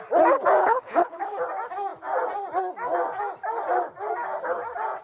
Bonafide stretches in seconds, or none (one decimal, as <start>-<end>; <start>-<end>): 0.0-0.6; 1.4-5.0